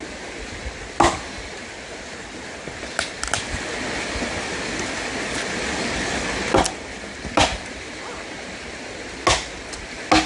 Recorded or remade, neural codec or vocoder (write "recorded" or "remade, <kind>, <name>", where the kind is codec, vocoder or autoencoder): recorded